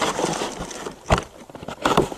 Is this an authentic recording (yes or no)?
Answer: yes